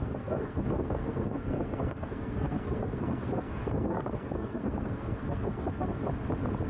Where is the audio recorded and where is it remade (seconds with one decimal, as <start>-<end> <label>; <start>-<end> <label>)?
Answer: 0.0-6.0 remade; 6.0-6.7 recorded